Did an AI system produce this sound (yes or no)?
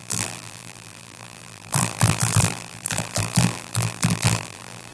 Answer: yes